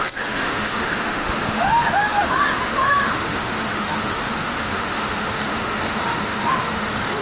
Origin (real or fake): fake